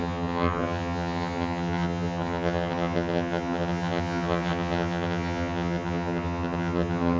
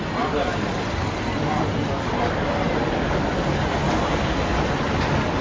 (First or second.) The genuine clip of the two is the second